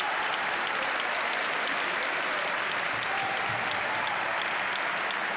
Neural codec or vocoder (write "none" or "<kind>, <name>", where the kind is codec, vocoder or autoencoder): none